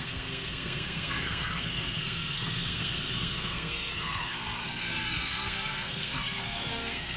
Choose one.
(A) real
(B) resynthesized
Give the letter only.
B